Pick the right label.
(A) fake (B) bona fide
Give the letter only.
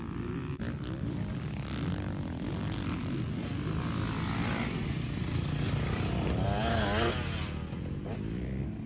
B